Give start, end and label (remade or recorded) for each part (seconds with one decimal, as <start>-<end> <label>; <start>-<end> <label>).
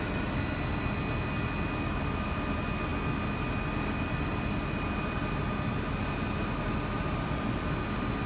0.0-8.3 recorded